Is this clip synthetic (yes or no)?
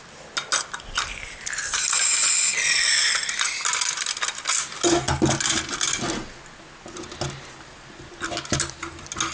no